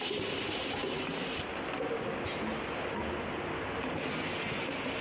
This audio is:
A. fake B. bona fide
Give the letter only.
B